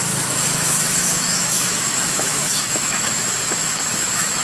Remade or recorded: remade